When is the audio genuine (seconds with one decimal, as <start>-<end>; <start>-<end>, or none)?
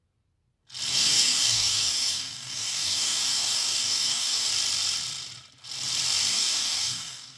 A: 0.0-0.9; 4.5-6.3